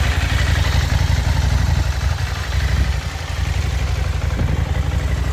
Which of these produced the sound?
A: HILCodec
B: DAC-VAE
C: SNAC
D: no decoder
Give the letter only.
D